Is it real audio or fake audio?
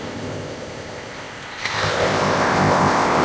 fake